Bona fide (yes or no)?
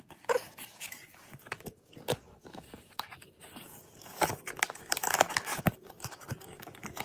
no